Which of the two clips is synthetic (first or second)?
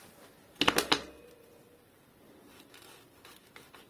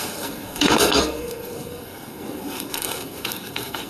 second